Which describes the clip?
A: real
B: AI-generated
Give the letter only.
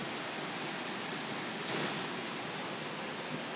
A